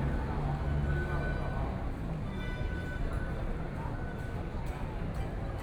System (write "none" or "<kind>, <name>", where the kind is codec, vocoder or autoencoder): none